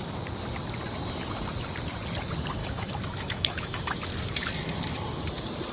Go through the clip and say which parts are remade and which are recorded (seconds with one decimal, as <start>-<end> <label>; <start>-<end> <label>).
0.0-2.6 recorded; 2.6-4.1 remade; 4.1-5.7 recorded